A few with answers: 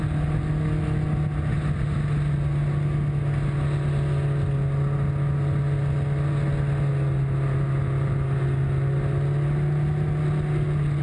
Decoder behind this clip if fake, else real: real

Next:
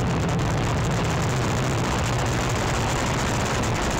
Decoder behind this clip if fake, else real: real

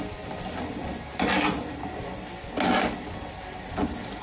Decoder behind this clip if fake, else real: real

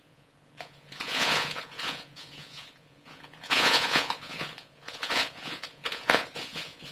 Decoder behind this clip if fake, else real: fake, vocoder, Vocos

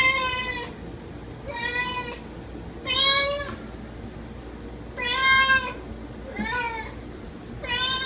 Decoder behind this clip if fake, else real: real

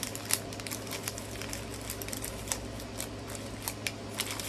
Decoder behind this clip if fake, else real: real